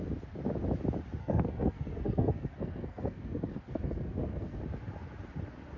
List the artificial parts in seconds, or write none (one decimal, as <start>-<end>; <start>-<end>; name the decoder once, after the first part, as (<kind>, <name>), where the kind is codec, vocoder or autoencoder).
1.2-4.6 (codec, SNAC)